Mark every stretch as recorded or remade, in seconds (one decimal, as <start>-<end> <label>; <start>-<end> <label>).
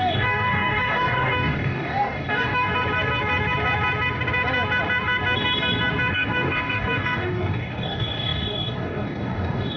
0.0-2.7 remade; 2.7-6.1 recorded; 6.1-9.8 remade